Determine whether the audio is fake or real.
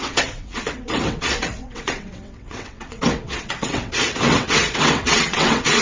fake